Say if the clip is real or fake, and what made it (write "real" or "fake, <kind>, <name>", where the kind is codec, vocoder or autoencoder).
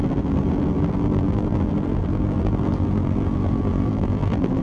fake, vocoder, BigVGAN v2